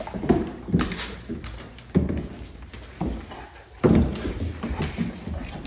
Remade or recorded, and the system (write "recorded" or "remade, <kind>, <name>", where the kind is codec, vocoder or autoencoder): recorded